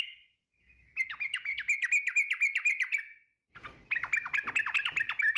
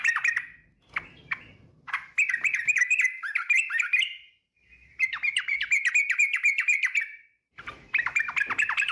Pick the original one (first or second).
first